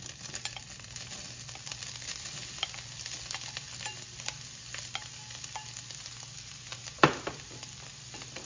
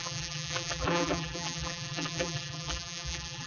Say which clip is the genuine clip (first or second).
first